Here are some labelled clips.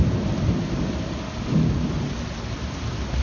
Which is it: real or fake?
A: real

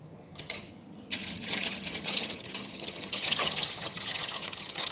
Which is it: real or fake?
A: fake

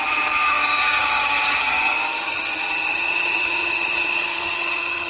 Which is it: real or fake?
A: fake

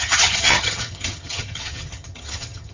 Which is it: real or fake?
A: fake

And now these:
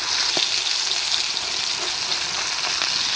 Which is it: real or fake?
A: real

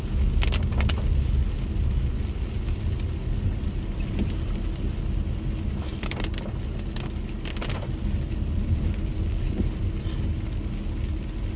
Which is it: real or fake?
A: real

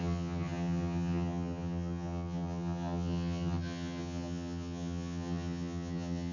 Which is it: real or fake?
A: fake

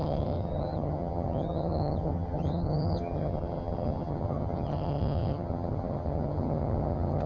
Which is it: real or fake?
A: fake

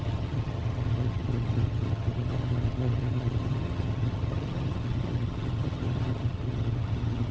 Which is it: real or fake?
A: fake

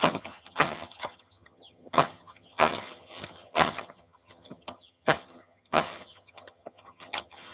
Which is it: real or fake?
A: fake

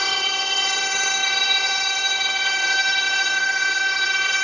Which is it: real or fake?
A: fake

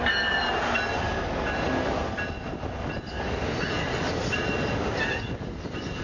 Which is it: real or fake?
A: real